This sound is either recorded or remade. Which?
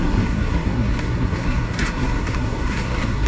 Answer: remade